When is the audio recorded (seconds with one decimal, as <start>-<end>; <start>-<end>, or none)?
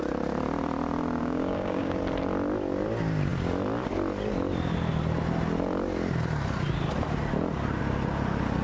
0.0-1.2; 2.0-8.6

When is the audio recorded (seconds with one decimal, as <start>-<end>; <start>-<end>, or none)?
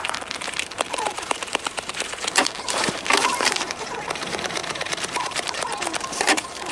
none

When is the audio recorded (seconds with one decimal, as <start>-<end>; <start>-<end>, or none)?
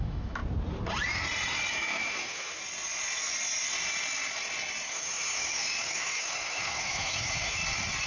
0.4-1.7; 2.6-4.9; 7.6-8.1